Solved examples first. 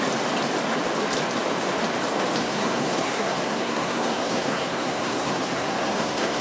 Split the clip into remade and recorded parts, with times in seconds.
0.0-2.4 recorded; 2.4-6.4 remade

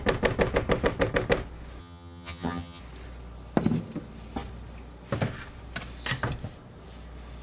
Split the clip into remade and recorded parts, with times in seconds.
0.0-1.8 recorded; 1.8-2.8 remade; 2.8-7.4 recorded

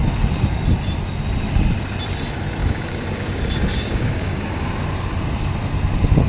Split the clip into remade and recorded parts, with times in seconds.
0.0-2.6 recorded; 2.6-4.5 remade; 4.5-6.3 recorded

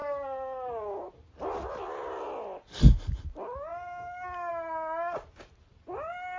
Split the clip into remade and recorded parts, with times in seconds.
0.0-6.4 recorded

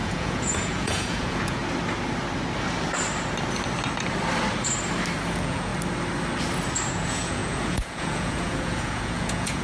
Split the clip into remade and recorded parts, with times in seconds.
0.0-1.6 remade; 1.6-5.3 recorded; 5.3-5.7 remade; 5.7-6.9 recorded; 6.9-9.6 remade

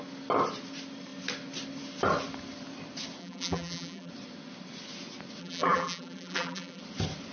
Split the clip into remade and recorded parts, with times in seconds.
0.0-3.2 recorded; 3.2-4.1 remade; 4.1-5.4 recorded; 5.4-6.8 remade; 6.8-7.3 recorded

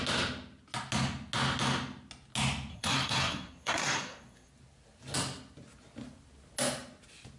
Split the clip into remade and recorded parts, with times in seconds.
0.0-2.7 recorded; 2.7-4.5 remade; 4.5-7.4 recorded